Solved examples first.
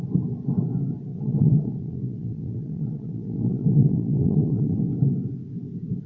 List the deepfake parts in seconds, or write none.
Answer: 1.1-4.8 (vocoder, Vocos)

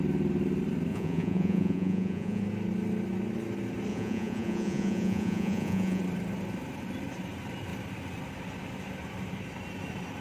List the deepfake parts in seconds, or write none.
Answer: 0.9-2.4 (vocoder, Vocos); 3.9-6.0

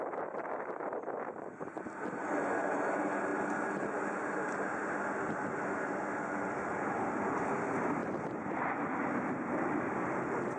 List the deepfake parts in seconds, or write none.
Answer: none